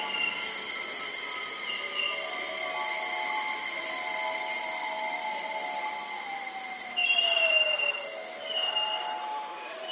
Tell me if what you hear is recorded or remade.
recorded